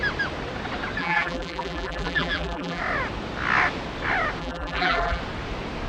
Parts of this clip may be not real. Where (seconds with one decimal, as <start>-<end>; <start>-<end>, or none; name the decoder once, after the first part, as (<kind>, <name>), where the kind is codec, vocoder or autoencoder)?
1.0-2.8 (vocoder, BigVGAN v2); 4.4-5.2